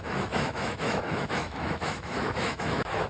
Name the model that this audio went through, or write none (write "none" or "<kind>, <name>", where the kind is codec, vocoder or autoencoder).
autoencoder, DAC-VAE